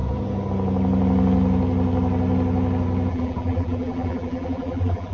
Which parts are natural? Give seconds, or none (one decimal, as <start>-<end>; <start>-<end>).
0.0-3.1